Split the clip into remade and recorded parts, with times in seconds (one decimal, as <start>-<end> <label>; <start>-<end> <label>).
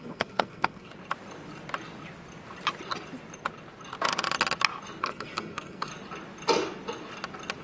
0.0-0.9 remade; 0.9-5.0 recorded; 5.0-5.9 remade; 5.9-7.6 recorded